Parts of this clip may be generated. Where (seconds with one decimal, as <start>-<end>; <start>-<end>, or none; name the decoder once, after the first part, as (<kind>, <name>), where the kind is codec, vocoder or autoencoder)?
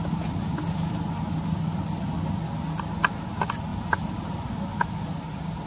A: 3.7-4.5 (vocoder, BigVGAN v2)